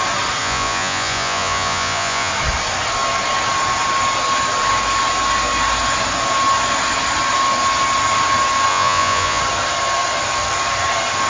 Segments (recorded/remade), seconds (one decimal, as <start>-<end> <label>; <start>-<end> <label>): 0.0-0.4 recorded; 0.4-2.3 remade; 2.3-8.7 recorded; 8.7-9.4 remade; 9.4-11.3 recorded